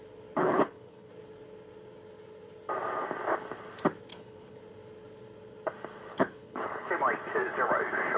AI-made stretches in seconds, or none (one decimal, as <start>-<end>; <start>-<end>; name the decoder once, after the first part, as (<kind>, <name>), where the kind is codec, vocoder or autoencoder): 0.4-1.1 (codec, HILCodec); 4.1-4.6; 6.1-6.9